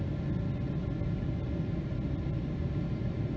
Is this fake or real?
real